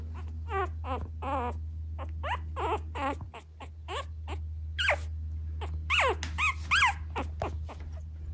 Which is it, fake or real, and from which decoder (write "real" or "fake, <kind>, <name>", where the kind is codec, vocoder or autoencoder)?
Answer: real